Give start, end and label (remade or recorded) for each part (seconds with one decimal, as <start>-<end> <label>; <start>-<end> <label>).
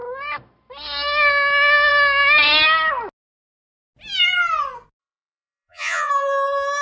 0.0-5.0 recorded; 5.0-6.1 remade; 6.1-6.8 recorded